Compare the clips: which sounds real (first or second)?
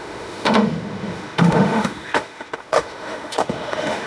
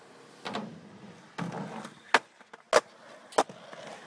second